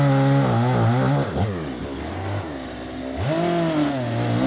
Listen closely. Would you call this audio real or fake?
real